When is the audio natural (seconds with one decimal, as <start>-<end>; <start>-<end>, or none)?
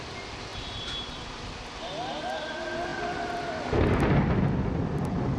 0.0-5.4